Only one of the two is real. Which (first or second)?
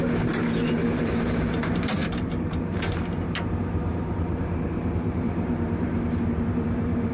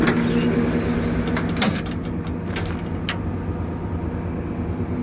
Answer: second